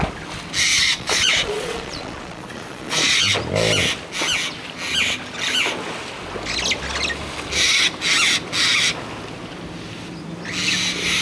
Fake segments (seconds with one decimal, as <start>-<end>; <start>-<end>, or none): 0.7-3.3